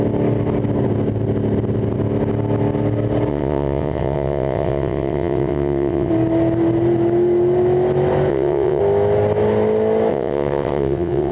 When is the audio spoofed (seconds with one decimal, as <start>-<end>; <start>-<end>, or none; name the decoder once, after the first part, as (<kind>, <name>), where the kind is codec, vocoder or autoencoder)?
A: 3.3-6.1 (vocoder, WaveNeXt); 8.3-8.8; 10.1-11.3

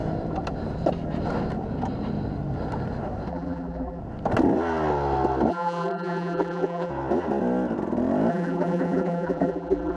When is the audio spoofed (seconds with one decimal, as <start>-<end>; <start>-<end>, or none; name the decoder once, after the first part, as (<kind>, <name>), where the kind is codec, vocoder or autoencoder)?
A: 3.3-4.0 (vocoder, BigVGAN v2); 5.5-6.9; 8.3-10.0

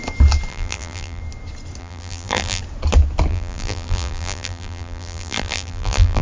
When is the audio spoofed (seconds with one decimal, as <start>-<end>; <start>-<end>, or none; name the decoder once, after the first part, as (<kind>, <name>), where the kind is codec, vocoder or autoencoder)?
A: 0.5-1.2 (vocoder, BigVGAN v2); 1.8-2.6; 3.3-6.2

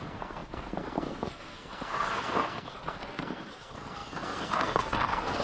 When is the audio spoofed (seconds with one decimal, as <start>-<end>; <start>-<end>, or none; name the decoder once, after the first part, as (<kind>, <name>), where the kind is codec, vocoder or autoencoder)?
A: 0.0-5.4 (codec, SNAC)

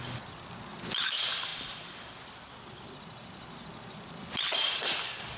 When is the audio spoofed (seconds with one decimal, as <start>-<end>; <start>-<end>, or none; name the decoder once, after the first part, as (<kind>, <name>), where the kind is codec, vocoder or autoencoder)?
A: none